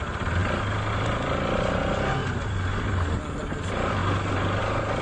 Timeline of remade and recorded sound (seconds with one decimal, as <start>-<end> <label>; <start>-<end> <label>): 0.0-5.0 recorded